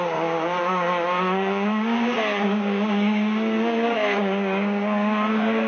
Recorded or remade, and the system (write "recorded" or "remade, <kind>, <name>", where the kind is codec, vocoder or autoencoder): remade, codec, DAC